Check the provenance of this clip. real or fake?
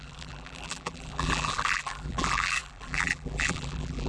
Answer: fake